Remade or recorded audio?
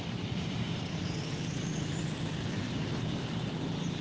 remade